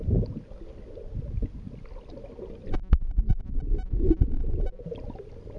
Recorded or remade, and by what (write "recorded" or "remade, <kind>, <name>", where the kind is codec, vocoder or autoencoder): recorded